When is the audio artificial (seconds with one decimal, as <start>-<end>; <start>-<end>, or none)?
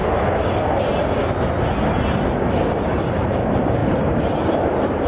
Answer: 3.1-5.1